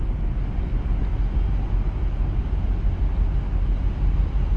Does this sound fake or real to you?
real